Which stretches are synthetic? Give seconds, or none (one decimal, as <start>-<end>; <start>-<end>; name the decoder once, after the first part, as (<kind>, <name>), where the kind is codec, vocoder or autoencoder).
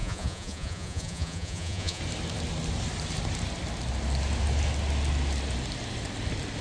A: 0.0-2.0 (vocoder, Vocos)